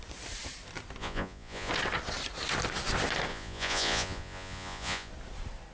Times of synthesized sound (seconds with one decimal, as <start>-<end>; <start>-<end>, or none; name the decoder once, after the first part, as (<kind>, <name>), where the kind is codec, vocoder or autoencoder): 1.0-1.7 (vocoder, Vocos); 3.3-5.1